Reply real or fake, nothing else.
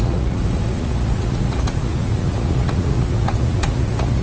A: fake